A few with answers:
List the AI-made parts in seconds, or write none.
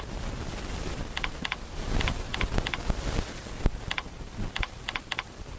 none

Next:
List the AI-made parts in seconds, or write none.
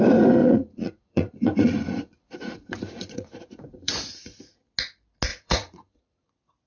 0.4-4.4 (vocoder, Vocos); 5.3-6.3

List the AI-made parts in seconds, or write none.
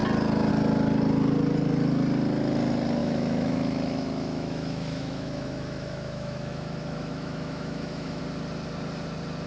3.0-8.2 (autoencoder, DAC-VAE)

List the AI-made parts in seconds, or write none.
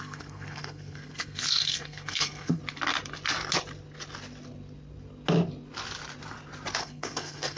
0.0-2.6 (codec, SNAC); 6.8-7.6